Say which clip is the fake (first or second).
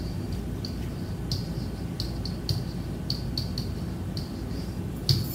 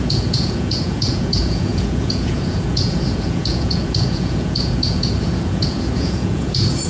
second